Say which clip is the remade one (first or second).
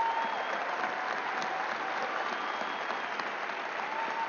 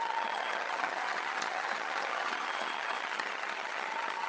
second